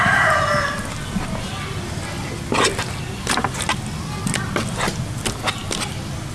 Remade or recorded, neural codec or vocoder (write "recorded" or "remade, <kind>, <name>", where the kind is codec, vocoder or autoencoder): recorded